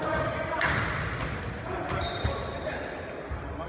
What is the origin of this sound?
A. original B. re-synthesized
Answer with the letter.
A